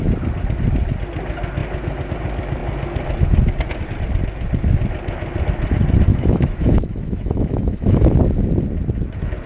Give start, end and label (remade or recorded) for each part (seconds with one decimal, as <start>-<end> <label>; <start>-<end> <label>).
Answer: 0.0-6.1 recorded; 6.1-8.1 remade; 8.1-9.5 recorded